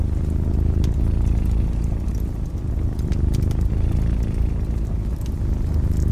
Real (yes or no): yes